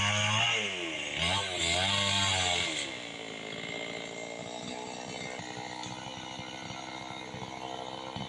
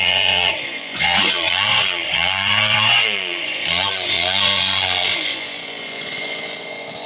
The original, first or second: first